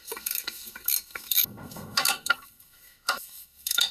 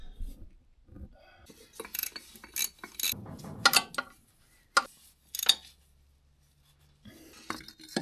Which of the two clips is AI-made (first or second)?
first